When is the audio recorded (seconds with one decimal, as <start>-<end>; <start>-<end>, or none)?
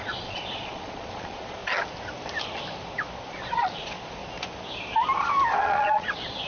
1.6-3.3; 4.2-5.6